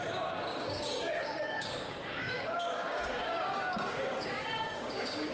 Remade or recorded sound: remade